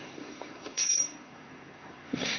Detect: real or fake fake